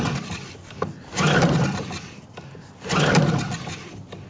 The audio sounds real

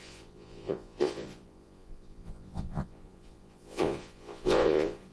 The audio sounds fake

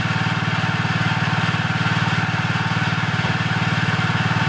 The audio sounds real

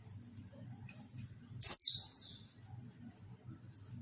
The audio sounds real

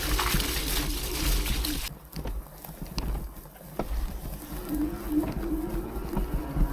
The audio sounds real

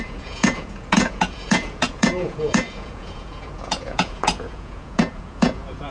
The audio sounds fake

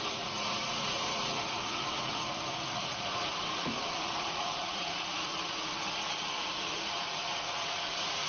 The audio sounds fake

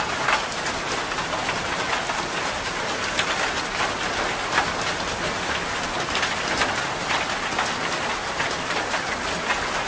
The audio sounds real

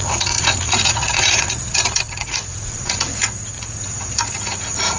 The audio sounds fake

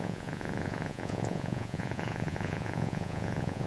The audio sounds fake